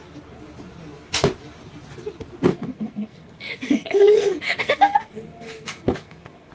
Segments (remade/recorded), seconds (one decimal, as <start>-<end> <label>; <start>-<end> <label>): 0.0-2.5 recorded; 2.5-6.5 remade